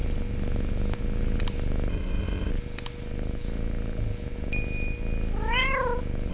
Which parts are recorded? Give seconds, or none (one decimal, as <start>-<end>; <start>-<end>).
0.0-1.9; 2.5-6.3